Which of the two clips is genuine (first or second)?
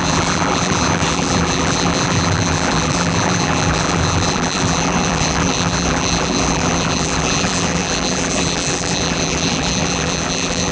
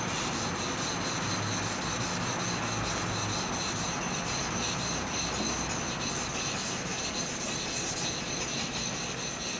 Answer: second